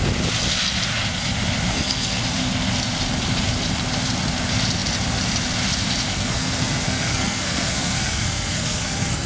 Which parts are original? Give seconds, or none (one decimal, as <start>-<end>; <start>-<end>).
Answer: 0.0-1.7; 2.2-6.1